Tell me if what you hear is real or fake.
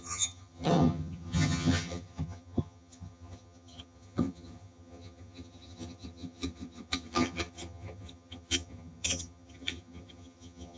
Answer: fake